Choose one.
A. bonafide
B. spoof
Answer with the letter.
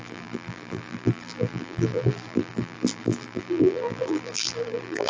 B